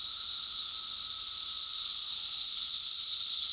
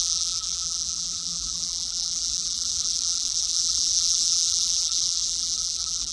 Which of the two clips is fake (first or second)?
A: second